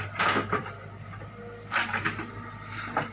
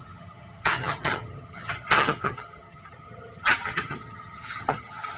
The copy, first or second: second